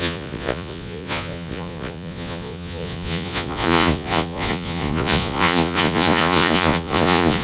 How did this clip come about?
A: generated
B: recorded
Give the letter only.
A